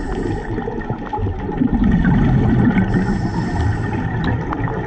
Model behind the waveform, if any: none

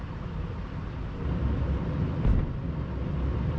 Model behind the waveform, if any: none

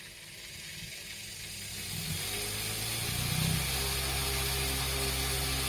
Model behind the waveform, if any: none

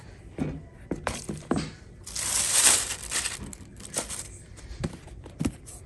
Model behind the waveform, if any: vocoder, BigVGAN v2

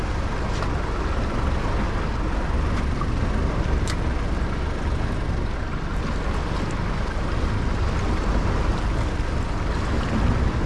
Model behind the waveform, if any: none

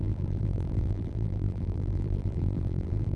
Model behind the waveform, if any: vocoder, BigVGAN v2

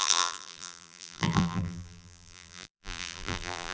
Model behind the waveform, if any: vocoder, BigVGAN v2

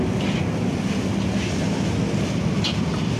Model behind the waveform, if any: none